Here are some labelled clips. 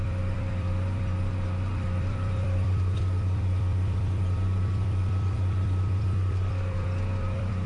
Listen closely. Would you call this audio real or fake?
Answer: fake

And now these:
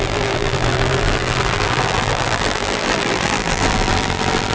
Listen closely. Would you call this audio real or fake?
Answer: fake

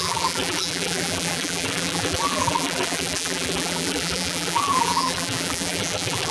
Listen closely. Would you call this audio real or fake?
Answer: fake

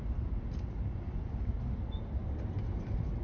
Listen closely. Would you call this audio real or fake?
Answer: real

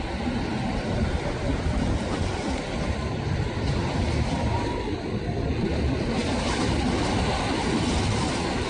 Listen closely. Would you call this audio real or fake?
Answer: real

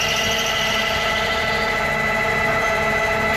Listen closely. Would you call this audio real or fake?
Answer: real